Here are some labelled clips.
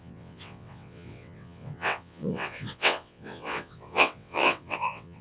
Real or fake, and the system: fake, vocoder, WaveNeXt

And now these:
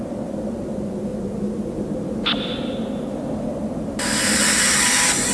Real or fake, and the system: real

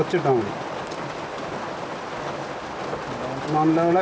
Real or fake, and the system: real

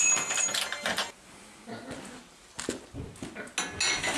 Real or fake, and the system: real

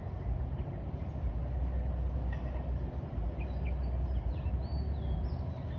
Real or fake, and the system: real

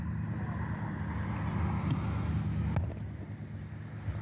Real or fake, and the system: real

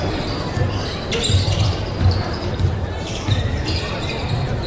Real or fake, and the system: real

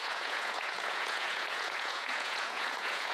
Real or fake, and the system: fake, vocoder, Vocos